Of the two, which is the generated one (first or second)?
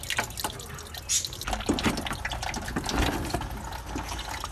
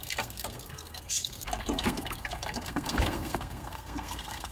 second